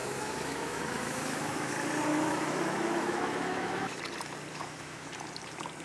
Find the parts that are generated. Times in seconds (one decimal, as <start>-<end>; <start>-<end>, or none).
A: 0.0-1.7; 2.1-4.0; 4.5-5.1